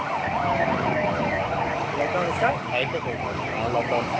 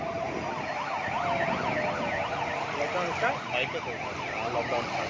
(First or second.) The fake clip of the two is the first